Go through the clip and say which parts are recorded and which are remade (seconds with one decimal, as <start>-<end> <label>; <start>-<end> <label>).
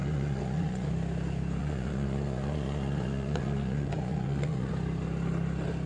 0.0-0.9 remade; 0.9-1.6 recorded; 1.6-4.7 remade; 4.7-5.9 recorded